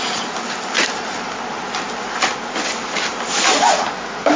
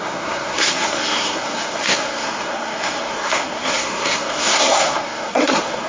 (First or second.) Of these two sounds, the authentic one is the first